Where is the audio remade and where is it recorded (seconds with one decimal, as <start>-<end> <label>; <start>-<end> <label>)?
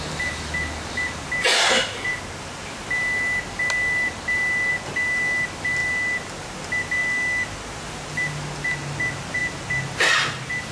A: 0.0-10.7 recorded